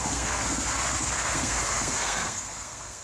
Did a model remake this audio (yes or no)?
yes